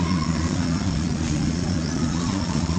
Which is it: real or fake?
fake